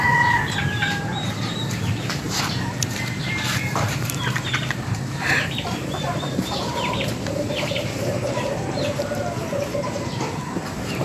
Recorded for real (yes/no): no